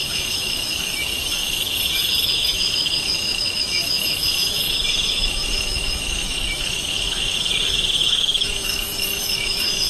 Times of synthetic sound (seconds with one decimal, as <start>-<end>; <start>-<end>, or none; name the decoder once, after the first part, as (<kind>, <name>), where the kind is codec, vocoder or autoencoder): 0.0-9.9 (autoencoder, DAC-VAE)